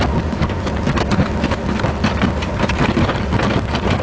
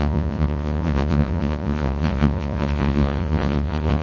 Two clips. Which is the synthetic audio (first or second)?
second